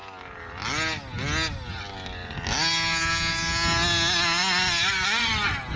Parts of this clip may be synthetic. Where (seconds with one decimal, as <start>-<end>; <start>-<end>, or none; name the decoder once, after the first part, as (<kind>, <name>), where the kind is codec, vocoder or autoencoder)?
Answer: none